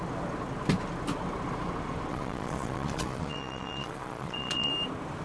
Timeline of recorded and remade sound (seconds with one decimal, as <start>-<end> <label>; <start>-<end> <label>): 0.0-2.1 recorded; 2.1-4.7 remade; 4.7-5.2 recorded